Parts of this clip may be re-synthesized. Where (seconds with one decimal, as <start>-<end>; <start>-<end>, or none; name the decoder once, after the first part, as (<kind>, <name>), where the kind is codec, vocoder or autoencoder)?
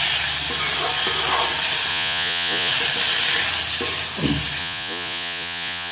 1.9-2.7 (vocoder, Vocos); 4.6-5.9